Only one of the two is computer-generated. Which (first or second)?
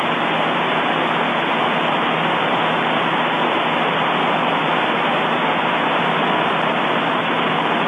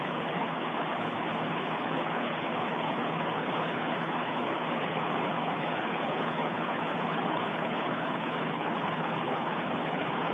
second